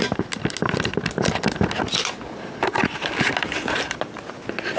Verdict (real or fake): real